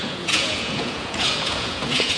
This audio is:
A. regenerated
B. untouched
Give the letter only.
A